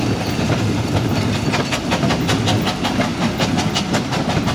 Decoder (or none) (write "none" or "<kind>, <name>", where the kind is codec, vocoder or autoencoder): none